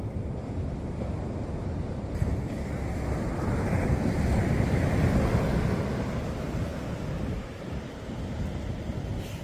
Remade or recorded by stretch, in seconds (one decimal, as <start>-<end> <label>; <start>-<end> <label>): 0.0-9.4 recorded